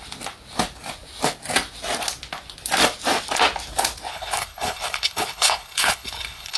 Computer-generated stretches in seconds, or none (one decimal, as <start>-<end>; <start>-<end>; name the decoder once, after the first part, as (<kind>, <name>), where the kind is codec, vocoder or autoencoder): 4.1-6.6 (codec, HILCodec)

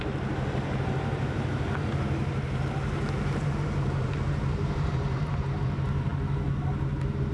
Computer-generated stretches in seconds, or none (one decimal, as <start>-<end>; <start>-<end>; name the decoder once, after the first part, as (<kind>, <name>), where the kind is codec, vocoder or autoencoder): 0.0-6.1 (vocoder, BigVGAN v2)

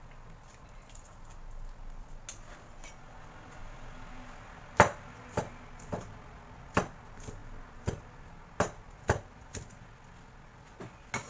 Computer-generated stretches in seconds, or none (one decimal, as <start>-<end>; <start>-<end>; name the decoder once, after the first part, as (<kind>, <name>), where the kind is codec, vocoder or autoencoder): none

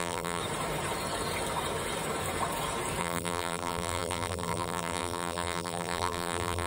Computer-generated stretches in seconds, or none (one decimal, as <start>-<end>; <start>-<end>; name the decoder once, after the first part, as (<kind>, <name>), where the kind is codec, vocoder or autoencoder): 0.0-0.4 (vocoder, BigVGAN v2); 3.0-6.7

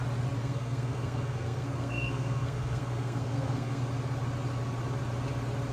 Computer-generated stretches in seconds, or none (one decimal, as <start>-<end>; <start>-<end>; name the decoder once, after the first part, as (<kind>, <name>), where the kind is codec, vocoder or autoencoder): 0.4-3.8 (codec, SNAC)